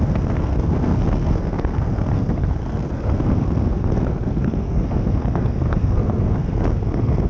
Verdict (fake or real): fake